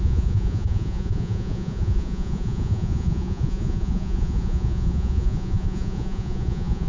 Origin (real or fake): fake